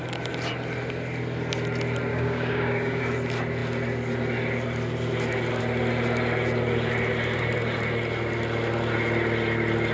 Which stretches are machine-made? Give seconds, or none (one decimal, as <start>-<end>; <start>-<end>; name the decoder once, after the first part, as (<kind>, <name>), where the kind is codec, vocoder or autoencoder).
2.1-3.0 (codec, DAC)

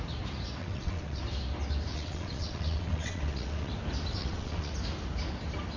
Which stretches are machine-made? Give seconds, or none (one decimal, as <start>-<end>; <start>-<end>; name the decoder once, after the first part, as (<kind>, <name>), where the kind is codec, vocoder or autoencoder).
0.6-1.2 (vocoder, WaveNeXt); 1.9-3.7; 4.2-4.7